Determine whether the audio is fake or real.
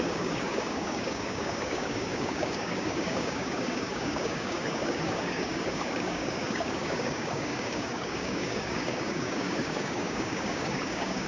fake